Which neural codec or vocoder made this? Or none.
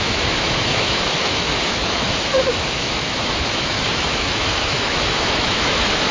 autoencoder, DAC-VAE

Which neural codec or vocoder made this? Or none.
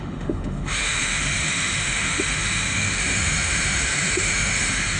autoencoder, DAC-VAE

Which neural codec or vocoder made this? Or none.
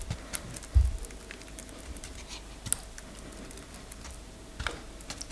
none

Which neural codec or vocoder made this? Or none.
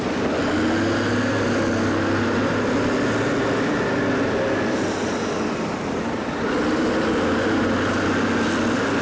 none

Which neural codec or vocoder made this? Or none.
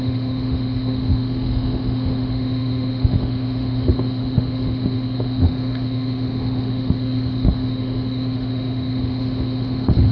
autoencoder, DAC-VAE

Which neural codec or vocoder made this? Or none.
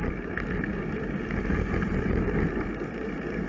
none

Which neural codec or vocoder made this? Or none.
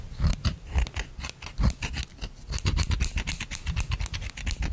none